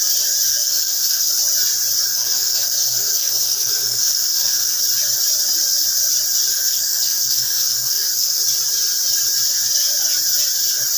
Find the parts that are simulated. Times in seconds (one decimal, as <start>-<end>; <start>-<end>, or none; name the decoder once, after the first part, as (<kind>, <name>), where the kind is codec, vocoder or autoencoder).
0.5-1.3 (codec, SNAC); 2.1-4.8; 6.5-8.4